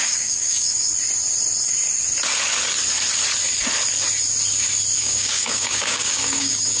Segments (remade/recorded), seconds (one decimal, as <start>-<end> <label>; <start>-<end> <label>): 0.0-0.9 remade; 0.9-5.0 recorded; 5.0-6.8 remade